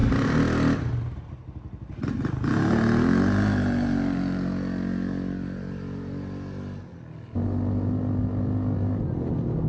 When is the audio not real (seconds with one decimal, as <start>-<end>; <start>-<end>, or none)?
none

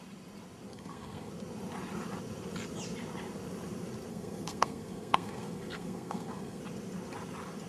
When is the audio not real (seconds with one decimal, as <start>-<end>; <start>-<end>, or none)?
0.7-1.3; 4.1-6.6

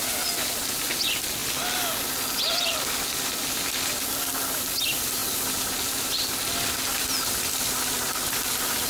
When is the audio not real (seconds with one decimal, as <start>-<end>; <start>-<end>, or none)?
none

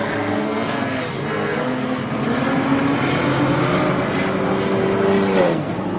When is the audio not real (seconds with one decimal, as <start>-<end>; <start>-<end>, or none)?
0.0-2.0; 5.4-6.0

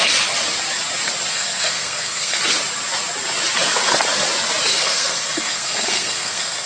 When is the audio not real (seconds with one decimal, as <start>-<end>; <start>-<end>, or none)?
1.3-2.4; 4.7-6.7

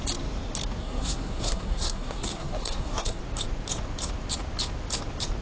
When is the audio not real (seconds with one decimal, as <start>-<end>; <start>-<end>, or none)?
0.8-3.2

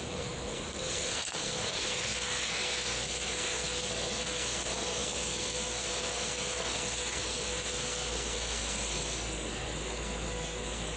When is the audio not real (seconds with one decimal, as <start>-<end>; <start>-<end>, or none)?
0.0-11.0

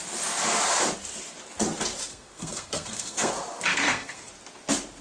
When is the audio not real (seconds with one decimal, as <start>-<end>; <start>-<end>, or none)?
2.1-3.3; 3.7-4.3